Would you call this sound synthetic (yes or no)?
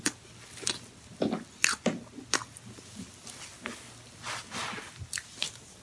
no